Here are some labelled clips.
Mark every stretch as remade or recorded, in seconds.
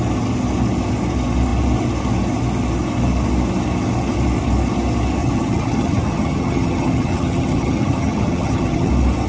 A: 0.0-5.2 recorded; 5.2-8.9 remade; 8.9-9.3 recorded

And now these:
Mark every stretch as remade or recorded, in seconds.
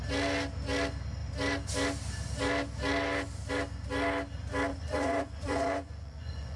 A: 0.0-4.7 recorded; 4.7-6.6 remade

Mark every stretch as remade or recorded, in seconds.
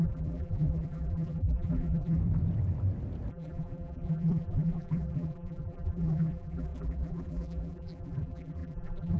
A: 0.0-2.2 remade; 2.2-3.3 recorded; 3.3-9.2 remade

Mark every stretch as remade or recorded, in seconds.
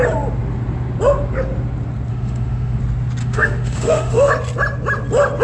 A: 0.0-2.1 recorded; 2.1-2.8 remade; 2.8-3.2 recorded; 3.2-4.3 remade; 4.3-5.4 recorded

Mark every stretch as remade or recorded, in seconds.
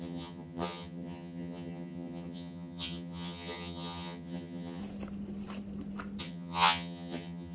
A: 0.0-4.8 remade; 4.8-6.2 recorded; 6.2-7.5 remade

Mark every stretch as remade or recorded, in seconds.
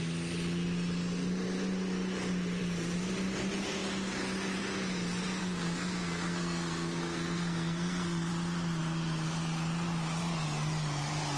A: 0.0-5.4 recorded; 5.4-8.3 remade; 8.3-11.4 recorded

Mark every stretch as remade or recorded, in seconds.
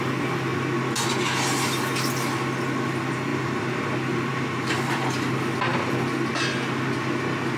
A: 0.0-3.3 recorded; 3.3-5.3 remade; 5.3-7.6 recorded